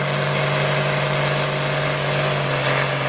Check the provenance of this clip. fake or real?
real